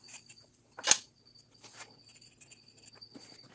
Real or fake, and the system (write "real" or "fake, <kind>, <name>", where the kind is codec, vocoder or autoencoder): real